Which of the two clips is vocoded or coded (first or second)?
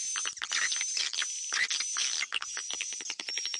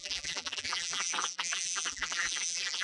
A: second